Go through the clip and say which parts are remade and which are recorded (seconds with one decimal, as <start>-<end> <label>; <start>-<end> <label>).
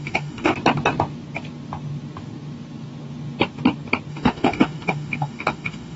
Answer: 0.0-0.5 remade; 0.5-4.1 recorded; 4.1-6.0 remade